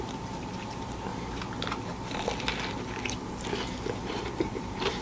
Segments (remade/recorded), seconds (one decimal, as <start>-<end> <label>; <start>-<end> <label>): 0.0-1.1 remade; 1.1-4.0 recorded; 4.0-5.0 remade